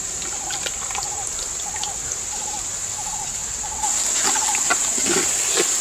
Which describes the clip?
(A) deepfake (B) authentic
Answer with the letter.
B